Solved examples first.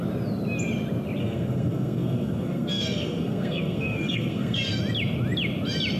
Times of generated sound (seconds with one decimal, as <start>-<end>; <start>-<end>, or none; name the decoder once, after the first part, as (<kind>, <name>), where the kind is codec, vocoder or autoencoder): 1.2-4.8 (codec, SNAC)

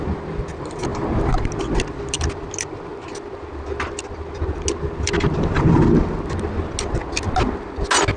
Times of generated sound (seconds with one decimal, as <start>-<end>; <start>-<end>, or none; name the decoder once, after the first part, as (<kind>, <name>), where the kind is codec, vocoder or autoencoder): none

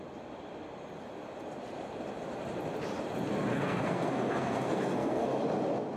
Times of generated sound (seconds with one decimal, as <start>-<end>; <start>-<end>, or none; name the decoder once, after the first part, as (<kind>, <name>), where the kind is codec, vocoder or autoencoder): 3.5-5.4 (codec, SNAC)